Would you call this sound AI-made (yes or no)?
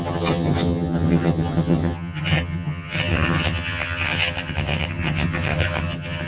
yes